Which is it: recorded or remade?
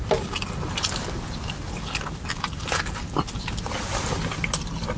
recorded